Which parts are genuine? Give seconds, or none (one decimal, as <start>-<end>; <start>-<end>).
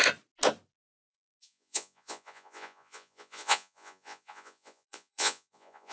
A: 0.0-1.1